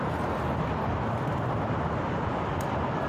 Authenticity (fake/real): real